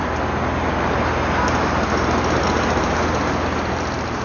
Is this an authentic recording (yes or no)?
yes